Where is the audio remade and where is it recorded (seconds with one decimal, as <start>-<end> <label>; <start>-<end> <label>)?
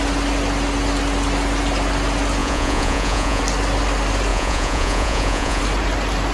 0.0-2.4 recorded; 2.4-3.4 remade; 3.4-4.3 recorded; 4.3-5.6 remade; 5.6-6.3 recorded